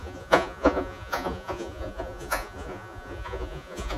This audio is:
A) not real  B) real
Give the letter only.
A